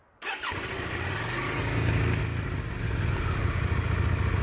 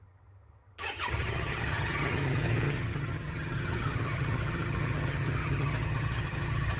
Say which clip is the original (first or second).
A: first